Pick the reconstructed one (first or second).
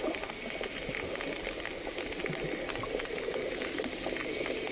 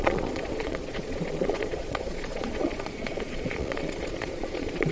second